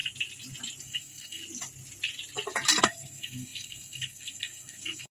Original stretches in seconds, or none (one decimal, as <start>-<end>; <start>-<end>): 0.0-0.8; 1.4-2.8